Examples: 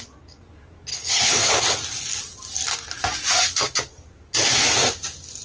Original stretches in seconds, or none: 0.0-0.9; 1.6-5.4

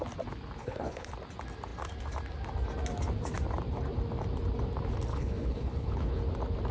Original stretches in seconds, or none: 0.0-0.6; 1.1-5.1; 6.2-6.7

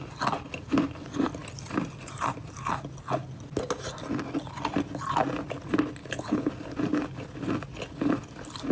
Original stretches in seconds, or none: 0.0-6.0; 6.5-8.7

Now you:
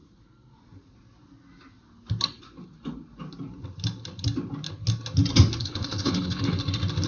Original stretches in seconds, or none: 0.0-5.6; 6.4-7.1

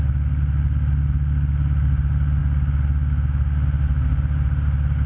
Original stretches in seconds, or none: 0.0-5.1

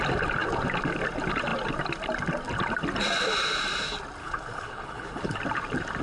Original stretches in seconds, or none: 0.0-4.2; 5.4-6.0

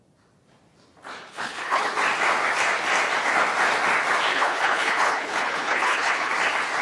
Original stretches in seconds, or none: 0.0-1.3; 1.9-4.3; 6.3-6.8

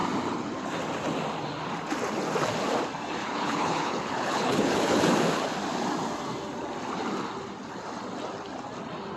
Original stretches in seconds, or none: 0.0-3.2; 5.0-9.2